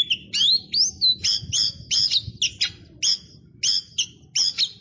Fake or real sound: real